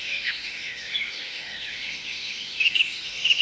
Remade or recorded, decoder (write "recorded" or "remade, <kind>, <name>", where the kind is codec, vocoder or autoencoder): remade, autoencoder, DAC-VAE